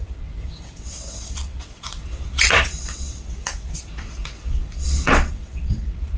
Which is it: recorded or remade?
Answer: remade